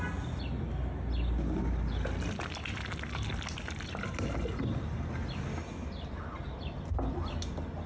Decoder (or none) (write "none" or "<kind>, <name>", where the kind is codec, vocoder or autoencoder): none